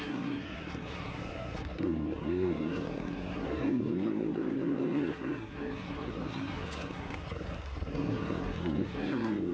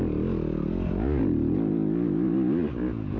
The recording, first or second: second